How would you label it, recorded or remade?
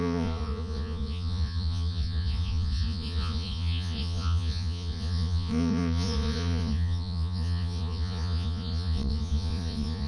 remade